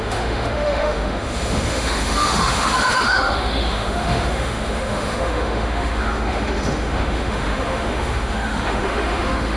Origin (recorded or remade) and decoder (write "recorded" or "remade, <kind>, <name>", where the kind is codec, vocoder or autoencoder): remade, autoencoder, DAC-VAE